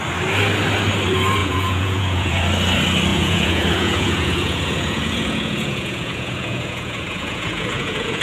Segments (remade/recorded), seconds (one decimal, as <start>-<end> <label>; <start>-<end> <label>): 0.0-1.4 recorded; 1.4-2.4 remade; 2.4-3.1 recorded; 3.1-8.2 remade